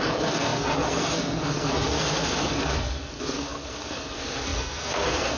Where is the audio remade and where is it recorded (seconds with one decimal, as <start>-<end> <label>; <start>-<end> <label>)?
0.0-5.4 remade